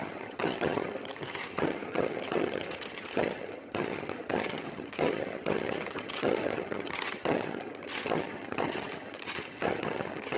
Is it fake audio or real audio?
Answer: fake